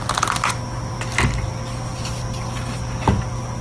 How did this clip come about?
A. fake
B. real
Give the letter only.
B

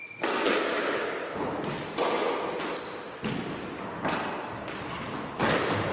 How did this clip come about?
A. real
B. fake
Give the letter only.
A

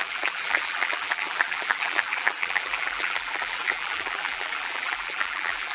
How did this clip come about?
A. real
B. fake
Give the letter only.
B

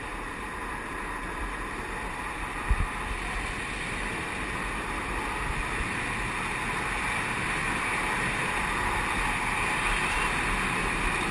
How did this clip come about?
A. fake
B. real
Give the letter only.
B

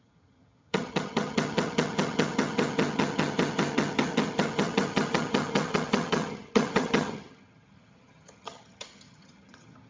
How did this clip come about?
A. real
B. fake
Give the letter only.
B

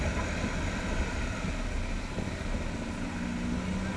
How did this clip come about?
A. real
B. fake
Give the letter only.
A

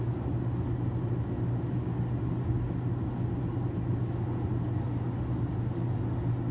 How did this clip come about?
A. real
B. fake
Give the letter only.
A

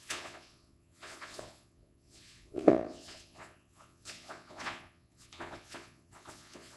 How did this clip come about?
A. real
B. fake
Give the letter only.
B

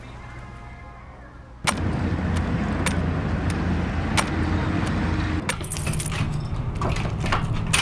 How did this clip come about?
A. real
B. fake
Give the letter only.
A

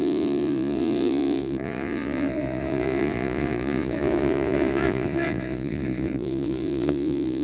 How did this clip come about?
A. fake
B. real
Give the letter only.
A